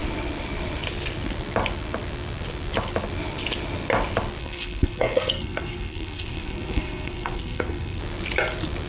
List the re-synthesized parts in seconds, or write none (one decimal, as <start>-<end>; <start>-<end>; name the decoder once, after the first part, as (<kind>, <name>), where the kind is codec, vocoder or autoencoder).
4.4-8.0 (codec, SNAC)